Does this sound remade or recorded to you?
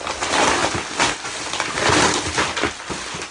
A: recorded